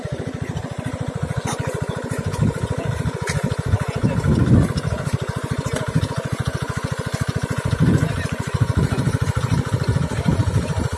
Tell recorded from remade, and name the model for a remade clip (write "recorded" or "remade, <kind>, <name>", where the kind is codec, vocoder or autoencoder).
remade, vocoder, BigVGAN v2